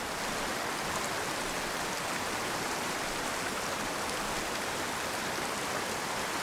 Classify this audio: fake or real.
fake